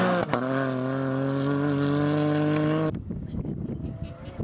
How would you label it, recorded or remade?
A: recorded